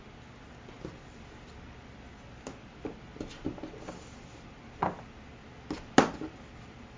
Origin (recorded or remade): recorded